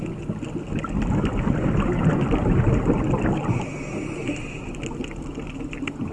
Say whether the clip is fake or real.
real